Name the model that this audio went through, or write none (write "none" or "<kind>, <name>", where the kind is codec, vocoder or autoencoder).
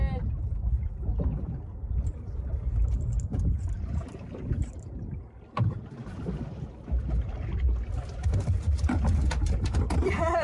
none